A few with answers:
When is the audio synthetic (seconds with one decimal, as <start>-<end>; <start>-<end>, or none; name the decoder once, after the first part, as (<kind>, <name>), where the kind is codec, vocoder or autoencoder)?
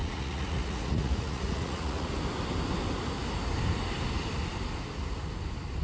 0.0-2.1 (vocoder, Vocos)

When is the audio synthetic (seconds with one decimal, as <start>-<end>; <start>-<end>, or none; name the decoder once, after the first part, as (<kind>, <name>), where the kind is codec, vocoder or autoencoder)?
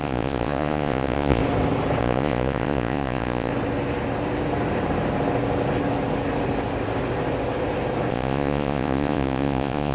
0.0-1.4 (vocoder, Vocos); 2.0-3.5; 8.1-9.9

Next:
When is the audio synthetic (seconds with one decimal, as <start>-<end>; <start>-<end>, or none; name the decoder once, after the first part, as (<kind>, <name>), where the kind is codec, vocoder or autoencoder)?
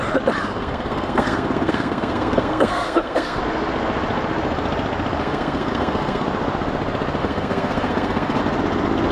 0.4-3.4 (codec, SNAC); 5.2-6.2; 7.2-8.4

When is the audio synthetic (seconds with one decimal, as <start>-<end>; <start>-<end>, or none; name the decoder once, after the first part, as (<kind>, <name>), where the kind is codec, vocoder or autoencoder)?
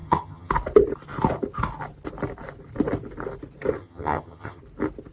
0.0-0.5 (vocoder, HiFi-GAN); 3.8-4.6